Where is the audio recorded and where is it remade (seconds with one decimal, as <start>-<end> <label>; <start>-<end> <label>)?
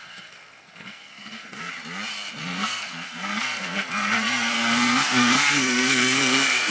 0.0-1.7 remade; 1.7-2.4 recorded; 2.4-6.7 remade